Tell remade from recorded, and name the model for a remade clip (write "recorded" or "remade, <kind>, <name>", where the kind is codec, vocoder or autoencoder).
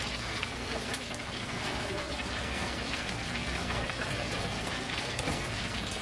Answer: remade, codec, SNAC